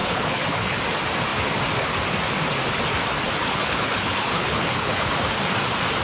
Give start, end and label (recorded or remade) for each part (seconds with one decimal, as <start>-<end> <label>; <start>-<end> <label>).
0.0-0.8 remade; 0.8-3.5 recorded; 3.5-5.1 remade; 5.1-6.0 recorded